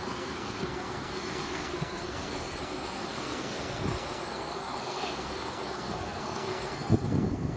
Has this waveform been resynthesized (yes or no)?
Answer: yes